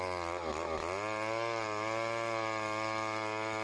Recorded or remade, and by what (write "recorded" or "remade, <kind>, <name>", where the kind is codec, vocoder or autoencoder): recorded